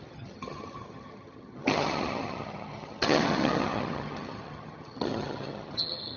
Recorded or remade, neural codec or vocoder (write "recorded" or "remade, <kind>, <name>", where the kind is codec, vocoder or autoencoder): remade, vocoder, HiFi-GAN